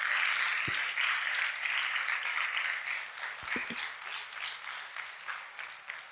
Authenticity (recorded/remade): recorded